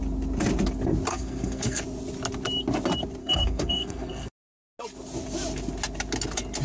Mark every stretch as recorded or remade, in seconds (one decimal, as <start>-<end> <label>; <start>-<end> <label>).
0.0-1.1 recorded; 1.1-1.8 remade; 1.8-3.2 recorded; 3.2-4.3 remade; 4.3-6.6 recorded